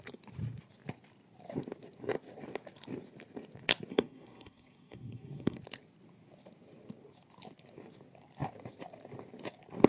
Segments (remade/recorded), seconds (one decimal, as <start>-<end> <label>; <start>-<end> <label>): 0.0-3.9 recorded; 3.9-5.6 remade; 5.6-9.9 recorded

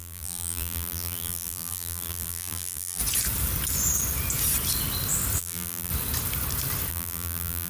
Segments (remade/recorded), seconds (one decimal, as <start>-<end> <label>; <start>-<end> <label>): 0.0-3.0 remade; 3.0-5.4 recorded; 5.4-5.9 remade; 5.9-6.9 recorded; 6.9-7.7 remade

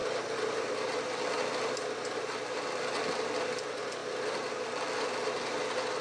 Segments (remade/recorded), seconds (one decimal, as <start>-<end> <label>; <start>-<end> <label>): 0.0-6.0 recorded

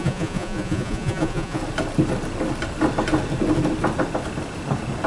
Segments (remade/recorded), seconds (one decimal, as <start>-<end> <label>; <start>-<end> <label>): 0.0-1.6 remade; 1.6-5.1 recorded